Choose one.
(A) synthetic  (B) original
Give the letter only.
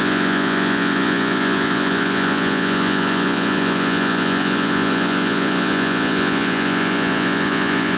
A